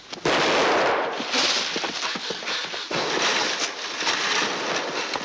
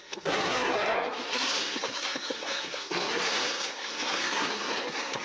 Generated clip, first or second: second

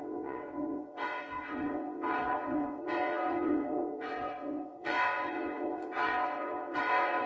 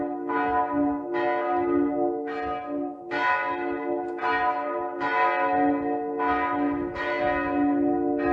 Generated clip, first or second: first